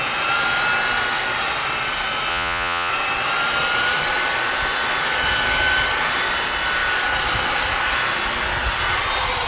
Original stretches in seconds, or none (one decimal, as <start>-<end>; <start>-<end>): 0.0-2.3; 2.9-9.5

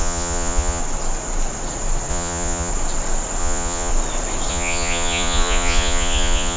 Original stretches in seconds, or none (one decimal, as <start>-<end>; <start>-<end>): 0.8-2.1; 2.7-3.4; 3.9-4.5

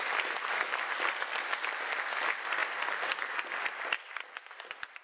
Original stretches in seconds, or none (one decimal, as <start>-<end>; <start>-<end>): 0.0-5.0

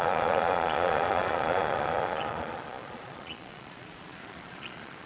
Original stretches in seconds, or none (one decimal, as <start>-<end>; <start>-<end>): none

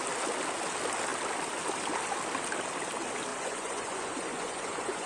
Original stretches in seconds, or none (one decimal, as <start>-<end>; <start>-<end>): 0.0-3.3

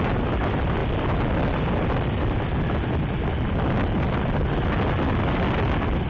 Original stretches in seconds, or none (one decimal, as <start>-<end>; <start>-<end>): 0.0-6.1

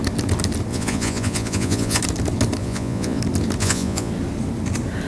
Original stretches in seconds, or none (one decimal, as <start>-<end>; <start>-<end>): 0.0-0.7; 2.0-2.6; 3.2-3.6; 4.1-5.1